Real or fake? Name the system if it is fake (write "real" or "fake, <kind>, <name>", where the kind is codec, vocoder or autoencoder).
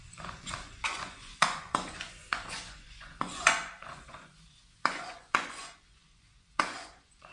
fake, vocoder, Vocos